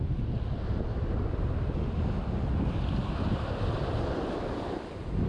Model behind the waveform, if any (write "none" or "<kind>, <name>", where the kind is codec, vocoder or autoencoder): none